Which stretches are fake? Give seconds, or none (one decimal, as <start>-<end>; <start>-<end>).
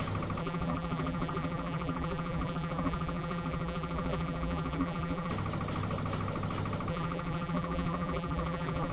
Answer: 0.4-5.3; 6.9-8.9